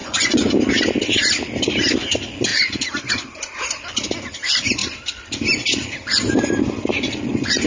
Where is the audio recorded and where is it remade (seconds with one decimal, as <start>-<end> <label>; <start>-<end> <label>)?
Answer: 0.0-0.5 remade; 0.5-7.7 recorded